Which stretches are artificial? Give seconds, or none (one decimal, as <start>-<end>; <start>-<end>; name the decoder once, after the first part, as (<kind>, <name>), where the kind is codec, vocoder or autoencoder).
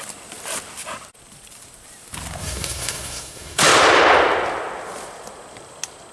2.4-3.6 (codec, SNAC)